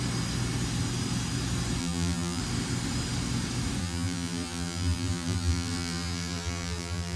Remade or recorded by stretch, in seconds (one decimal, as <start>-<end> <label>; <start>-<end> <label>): 0.0-1.8 recorded; 1.8-2.4 remade; 2.4-3.8 recorded; 3.8-7.2 remade